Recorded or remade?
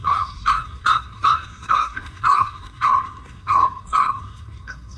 remade